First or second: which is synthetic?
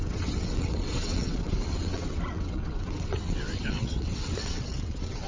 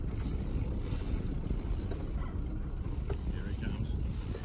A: first